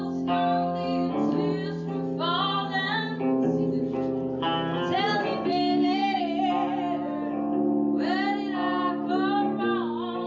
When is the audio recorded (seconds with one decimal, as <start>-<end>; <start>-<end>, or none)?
0.0-5.5; 6.2-10.3